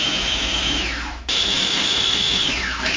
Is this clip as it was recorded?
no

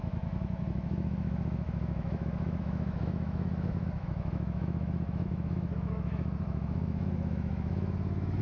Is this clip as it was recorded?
no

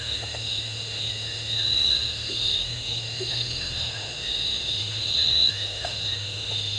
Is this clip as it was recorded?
no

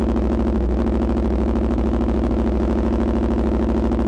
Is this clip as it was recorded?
no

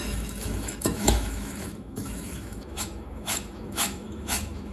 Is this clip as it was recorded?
no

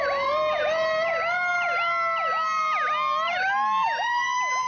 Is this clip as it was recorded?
yes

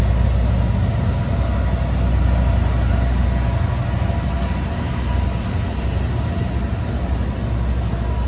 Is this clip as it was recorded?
yes